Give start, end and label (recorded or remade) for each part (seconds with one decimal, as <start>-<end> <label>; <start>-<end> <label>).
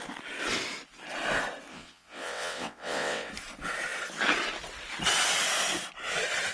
0.0-1.7 recorded; 1.7-3.3 remade; 3.3-6.5 recorded